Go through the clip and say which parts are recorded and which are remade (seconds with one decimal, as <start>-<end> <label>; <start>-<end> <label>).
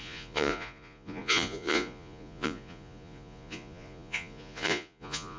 0.0-5.4 remade